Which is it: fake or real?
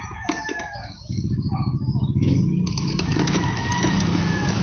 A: fake